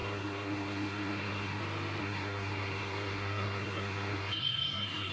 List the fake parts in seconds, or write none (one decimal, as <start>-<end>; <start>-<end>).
0.0-1.6; 2.0-5.1